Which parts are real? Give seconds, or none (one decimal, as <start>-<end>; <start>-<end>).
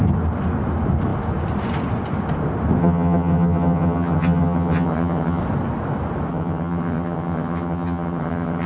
0.0-2.8; 5.4-6.3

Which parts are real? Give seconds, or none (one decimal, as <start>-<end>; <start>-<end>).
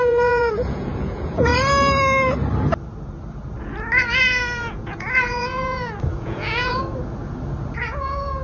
1.5-4.6; 6.8-7.8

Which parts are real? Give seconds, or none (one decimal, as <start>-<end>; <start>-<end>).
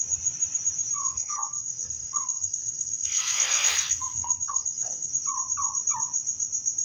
0.0-1.0; 5.1-6.8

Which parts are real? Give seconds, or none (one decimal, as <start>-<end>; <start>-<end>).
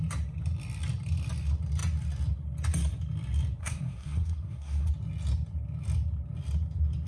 0.0-3.6; 4.9-7.1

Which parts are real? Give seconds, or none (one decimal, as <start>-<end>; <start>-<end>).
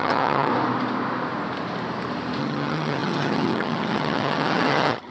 0.5-2.4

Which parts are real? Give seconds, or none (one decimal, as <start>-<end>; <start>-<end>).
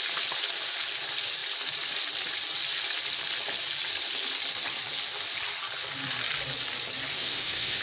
0.0-7.1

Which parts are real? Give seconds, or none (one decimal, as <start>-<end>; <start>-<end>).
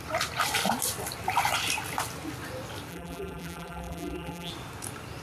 0.0-2.9; 4.5-5.2